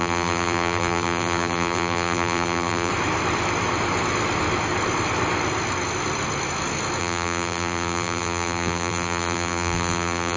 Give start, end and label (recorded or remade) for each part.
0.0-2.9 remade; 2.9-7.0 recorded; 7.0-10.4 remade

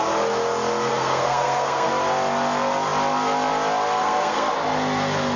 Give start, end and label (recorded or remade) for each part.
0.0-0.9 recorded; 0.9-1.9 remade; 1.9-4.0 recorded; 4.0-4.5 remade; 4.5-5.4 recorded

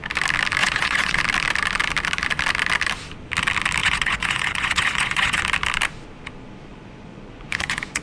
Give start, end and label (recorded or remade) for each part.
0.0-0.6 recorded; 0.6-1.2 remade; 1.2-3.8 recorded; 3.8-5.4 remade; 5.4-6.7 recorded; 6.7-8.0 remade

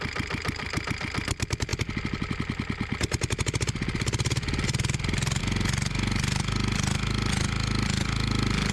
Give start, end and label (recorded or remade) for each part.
0.0-8.7 recorded

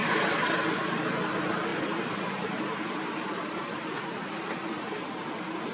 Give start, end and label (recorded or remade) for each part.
0.0-0.8 remade; 0.8-1.7 recorded; 1.7-5.1 remade; 5.1-5.7 recorded